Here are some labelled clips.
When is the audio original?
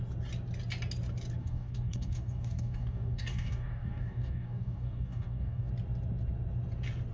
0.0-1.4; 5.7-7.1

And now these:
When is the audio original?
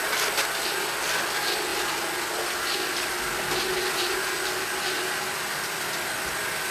0.0-6.7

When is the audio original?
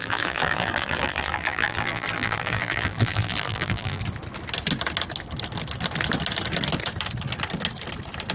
4.0-8.3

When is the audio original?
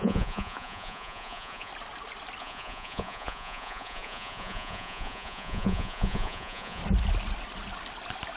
1.7-2.4; 6.8-8.4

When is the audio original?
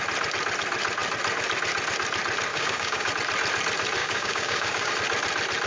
0.0-2.5; 3.1-4.0; 4.9-5.7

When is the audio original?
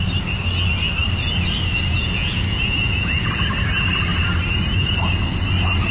0.0-1.9; 3.3-5.9